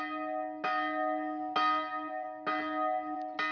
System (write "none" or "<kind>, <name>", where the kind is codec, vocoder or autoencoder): none